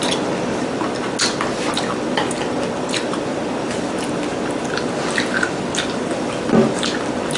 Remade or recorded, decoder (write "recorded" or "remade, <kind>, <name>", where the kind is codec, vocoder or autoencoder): recorded